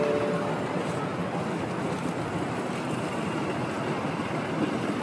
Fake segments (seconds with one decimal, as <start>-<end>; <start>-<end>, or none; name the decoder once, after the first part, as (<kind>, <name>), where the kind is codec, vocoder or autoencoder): none